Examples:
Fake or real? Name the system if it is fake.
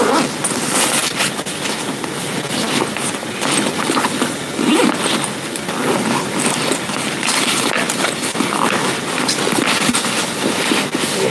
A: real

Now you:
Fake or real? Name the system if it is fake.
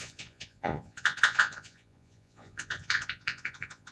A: fake, vocoder, Vocos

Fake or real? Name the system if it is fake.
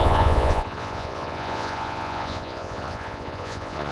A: fake, vocoder, Vocos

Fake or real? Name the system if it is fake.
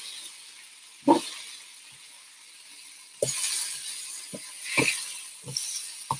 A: real